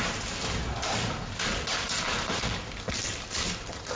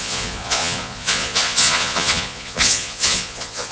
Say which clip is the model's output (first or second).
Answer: second